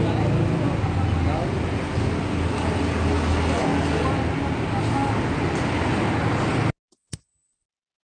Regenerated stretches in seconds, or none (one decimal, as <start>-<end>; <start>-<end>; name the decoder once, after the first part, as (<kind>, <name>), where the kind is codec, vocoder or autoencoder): none